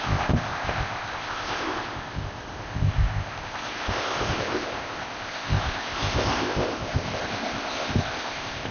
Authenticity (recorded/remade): remade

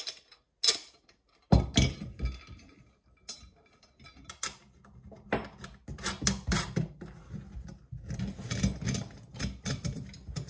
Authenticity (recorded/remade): recorded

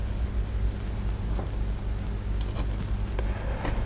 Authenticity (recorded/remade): recorded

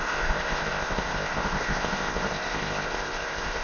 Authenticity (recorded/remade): remade